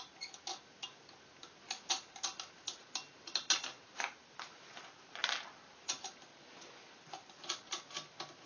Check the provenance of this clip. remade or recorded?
recorded